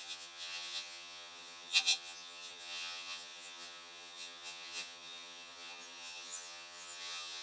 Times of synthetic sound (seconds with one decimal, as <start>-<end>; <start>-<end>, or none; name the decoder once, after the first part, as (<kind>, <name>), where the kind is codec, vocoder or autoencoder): 0.0-7.4 (vocoder, HiFi-GAN)